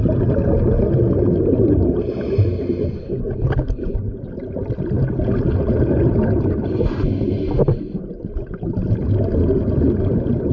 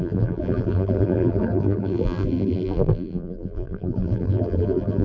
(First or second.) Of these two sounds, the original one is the first